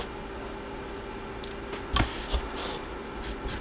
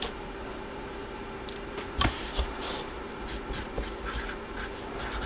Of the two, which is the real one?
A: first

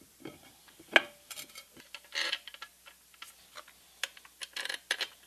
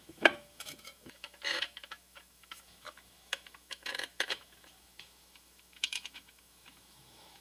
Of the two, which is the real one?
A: first